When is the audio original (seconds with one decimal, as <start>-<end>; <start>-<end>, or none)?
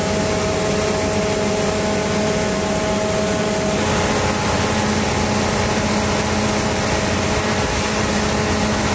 0.0-8.9